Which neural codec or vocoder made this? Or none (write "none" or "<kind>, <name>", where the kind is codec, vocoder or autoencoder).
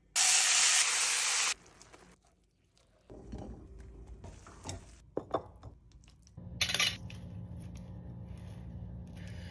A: none